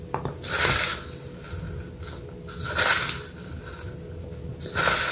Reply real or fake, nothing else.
real